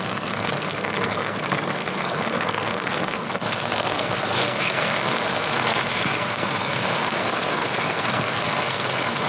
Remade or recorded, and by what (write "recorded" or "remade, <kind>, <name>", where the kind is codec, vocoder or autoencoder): remade, codec, SNAC